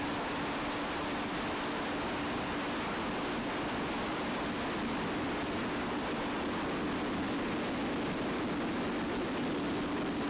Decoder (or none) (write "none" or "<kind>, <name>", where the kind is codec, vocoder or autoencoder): none